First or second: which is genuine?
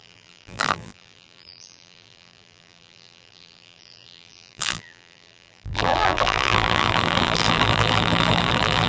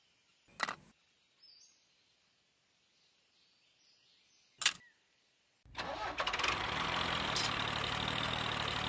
second